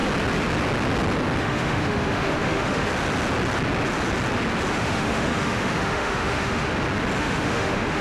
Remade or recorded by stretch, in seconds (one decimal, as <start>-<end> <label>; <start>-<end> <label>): 0.0-1.4 recorded; 1.4-2.9 remade; 2.9-4.7 recorded; 4.7-6.7 remade; 6.7-7.2 recorded; 7.2-8.0 remade